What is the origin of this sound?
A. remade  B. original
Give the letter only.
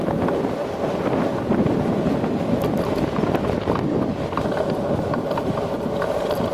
B